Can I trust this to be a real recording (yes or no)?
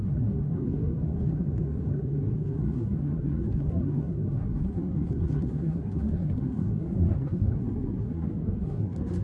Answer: no